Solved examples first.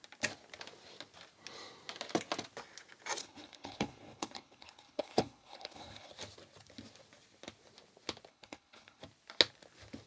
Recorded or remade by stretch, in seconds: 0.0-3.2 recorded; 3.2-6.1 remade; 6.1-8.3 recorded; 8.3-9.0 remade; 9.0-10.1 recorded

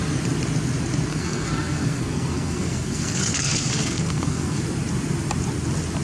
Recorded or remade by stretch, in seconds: 0.0-1.1 recorded; 1.1-4.6 remade; 4.6-6.0 recorded

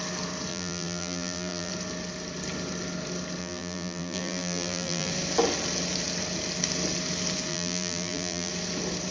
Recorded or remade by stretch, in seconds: 0.0-0.5 recorded; 0.5-1.7 remade; 1.7-3.4 recorded; 3.4-5.1 remade; 5.1-7.5 recorded; 7.5-8.5 remade; 8.5-9.1 recorded

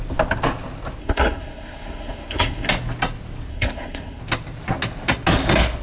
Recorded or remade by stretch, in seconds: 0.0-1.0 recorded; 1.0-2.7 remade; 2.7-3.5 recorded; 3.5-4.2 remade; 4.2-5.8 recorded